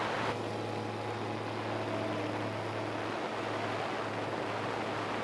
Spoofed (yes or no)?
no